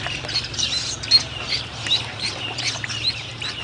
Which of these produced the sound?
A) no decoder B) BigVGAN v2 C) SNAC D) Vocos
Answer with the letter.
B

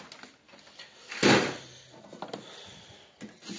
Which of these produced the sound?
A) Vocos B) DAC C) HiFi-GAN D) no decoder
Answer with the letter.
D